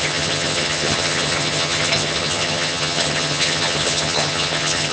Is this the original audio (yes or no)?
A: no